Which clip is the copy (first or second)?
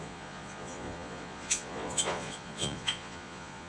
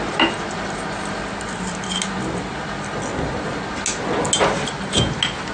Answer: first